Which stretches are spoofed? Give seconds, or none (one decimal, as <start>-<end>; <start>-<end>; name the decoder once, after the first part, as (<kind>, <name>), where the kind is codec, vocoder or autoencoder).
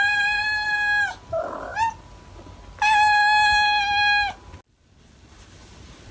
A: none